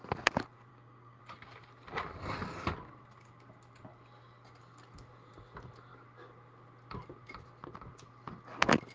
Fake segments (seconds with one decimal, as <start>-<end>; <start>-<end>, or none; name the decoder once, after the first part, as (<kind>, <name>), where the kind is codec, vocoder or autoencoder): 0.7-1.2 (codec, DAC)